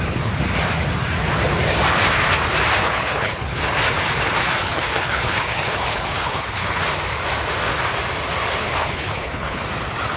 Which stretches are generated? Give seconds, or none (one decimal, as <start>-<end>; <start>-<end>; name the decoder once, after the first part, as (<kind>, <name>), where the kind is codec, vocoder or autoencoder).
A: 2.8-3.6 (codec, HILCodec); 4.4-6.8; 8.6-9.6